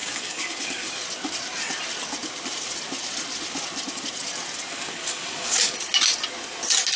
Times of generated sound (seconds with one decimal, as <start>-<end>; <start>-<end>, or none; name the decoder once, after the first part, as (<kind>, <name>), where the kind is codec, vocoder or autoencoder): 0.0-0.9 (codec, DAC); 4.7-5.7